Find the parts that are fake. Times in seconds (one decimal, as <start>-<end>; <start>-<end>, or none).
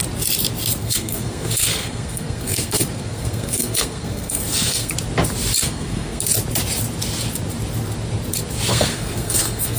0.8-4.9; 5.6-6.2; 8.7-9.8